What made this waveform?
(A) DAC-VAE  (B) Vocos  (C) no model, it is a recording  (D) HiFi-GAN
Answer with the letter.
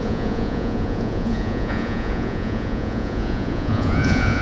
B